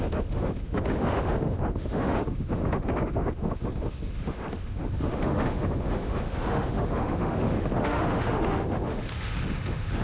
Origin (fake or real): fake